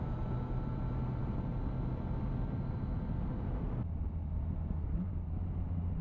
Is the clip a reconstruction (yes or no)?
no